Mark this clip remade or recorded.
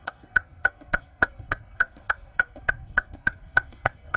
remade